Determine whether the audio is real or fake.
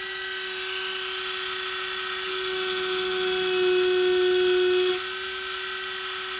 real